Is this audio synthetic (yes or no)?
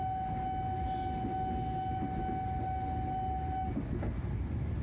no